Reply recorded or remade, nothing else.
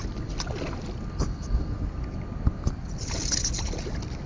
recorded